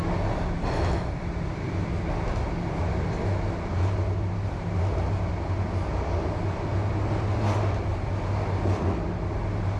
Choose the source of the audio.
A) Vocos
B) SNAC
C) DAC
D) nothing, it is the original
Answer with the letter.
D